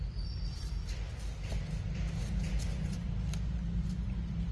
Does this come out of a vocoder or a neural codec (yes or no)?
no